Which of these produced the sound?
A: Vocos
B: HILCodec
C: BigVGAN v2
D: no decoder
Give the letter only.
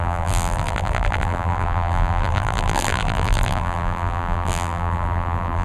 C